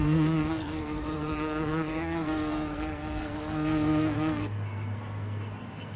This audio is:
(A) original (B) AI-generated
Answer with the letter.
B